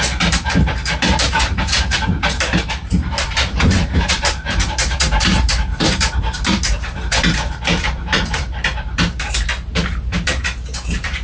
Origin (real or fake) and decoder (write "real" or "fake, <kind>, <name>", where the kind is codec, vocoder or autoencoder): fake, vocoder, BigVGAN v2